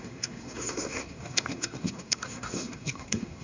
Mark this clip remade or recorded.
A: remade